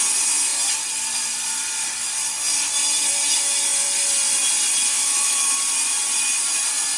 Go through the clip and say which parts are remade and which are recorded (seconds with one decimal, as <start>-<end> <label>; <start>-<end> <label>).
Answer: 0.0-4.9 recorded; 4.9-5.6 remade; 5.6-7.0 recorded